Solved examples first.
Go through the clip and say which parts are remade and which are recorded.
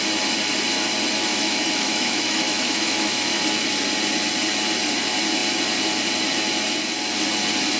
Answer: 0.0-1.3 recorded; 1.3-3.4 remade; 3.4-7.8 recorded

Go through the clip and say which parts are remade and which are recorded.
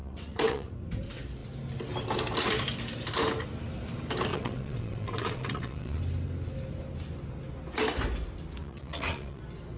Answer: 0.0-0.7 remade; 0.7-4.3 recorded; 4.3-6.0 remade; 6.0-8.6 recorded; 8.6-9.4 remade; 9.4-9.8 recorded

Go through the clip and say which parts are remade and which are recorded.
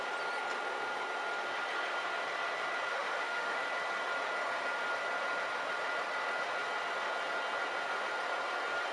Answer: 0.0-2.9 recorded; 2.9-3.6 remade; 3.6-8.9 recorded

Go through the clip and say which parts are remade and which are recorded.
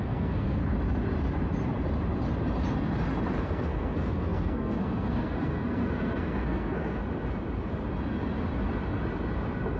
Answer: 0.0-0.6 remade; 0.6-3.4 recorded; 3.4-7.0 remade; 7.0-9.8 recorded